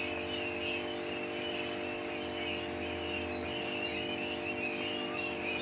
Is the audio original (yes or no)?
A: yes